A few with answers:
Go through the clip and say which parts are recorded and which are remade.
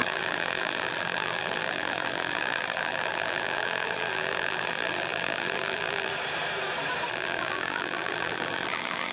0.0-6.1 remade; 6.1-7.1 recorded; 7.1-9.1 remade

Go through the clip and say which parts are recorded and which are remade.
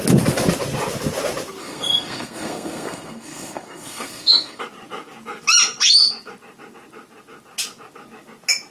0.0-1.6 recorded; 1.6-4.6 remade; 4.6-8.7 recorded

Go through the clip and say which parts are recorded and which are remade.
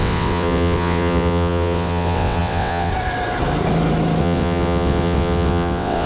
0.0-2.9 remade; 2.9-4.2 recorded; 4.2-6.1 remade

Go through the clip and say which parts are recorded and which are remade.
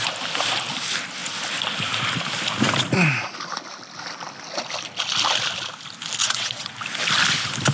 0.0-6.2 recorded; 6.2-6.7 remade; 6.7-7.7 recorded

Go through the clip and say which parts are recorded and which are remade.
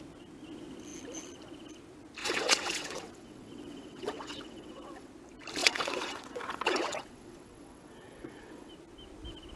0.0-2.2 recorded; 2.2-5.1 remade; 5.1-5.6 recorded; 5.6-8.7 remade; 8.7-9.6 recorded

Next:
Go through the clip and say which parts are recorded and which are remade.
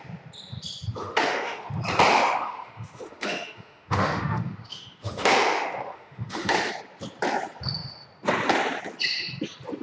0.0-1.0 recorded; 1.0-1.7 remade; 1.7-2.1 recorded; 2.1-6.7 remade; 6.7-9.8 recorded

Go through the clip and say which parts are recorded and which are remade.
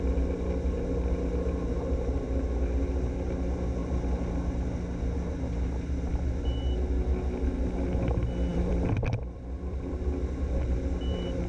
0.0-8.5 recorded; 8.5-10.0 remade; 10.0-11.5 recorded